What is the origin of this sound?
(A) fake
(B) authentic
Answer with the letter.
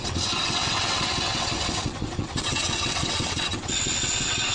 A